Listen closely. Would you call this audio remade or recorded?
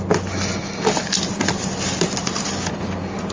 recorded